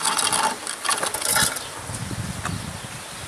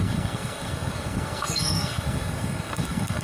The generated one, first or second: second